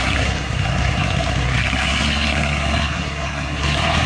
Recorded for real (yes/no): no